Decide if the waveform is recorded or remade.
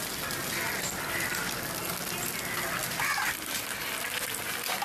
recorded